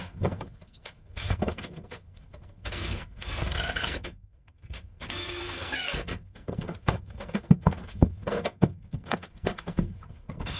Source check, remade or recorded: remade